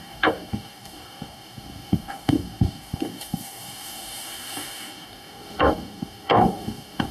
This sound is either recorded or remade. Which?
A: remade